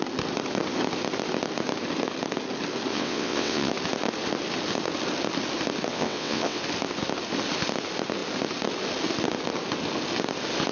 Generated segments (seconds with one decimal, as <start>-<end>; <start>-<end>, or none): 2.9-3.7; 5.9-6.6

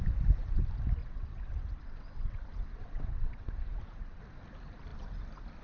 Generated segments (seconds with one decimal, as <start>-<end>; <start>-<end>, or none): 1.0-4.2

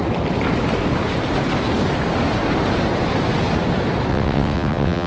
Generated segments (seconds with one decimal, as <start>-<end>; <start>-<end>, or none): 4.1-5.1